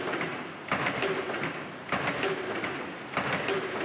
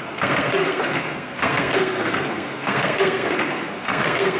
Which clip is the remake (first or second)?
second